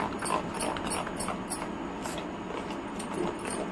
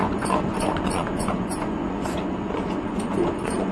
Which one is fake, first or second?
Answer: second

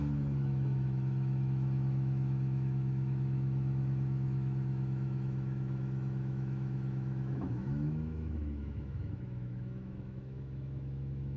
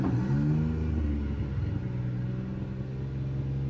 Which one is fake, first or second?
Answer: first